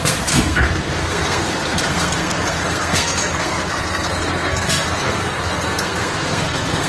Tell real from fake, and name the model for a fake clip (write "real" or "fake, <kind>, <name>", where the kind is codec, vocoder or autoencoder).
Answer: fake, codec, SNAC